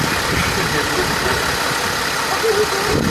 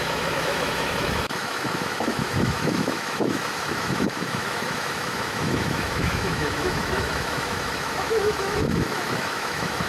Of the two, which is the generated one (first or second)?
second